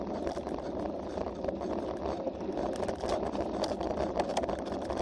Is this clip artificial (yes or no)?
no